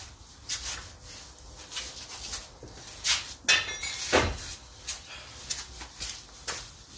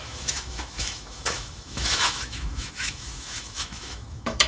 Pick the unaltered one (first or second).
first